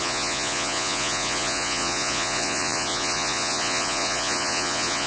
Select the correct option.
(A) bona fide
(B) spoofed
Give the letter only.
B